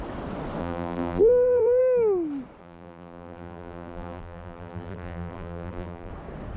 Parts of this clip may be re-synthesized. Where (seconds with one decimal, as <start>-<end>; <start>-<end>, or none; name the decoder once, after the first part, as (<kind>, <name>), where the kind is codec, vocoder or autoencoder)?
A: 0.6-1.8 (vocoder, BigVGAN v2); 2.6-6.1